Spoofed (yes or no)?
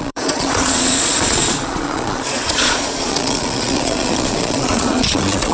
yes